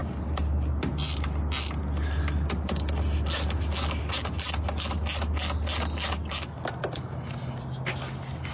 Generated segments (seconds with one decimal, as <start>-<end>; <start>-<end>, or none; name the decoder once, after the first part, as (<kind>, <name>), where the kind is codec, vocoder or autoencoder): none

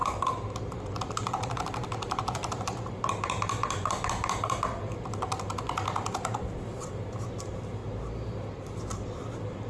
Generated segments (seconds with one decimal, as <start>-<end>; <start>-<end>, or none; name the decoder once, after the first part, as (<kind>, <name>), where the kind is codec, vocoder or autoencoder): 0.0-4.6 (vocoder, BigVGAN v2); 7.8-8.8